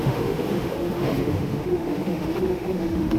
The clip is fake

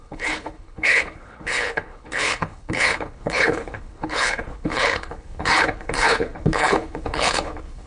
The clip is fake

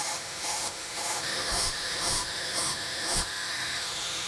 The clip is fake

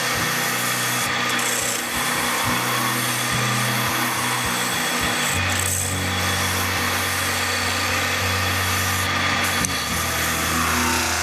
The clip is real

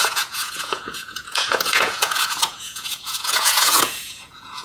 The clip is fake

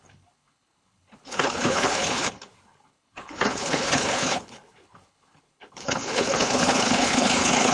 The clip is fake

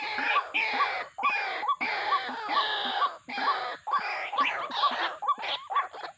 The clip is real